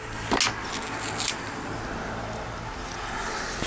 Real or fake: real